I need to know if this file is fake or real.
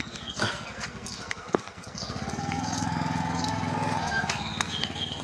fake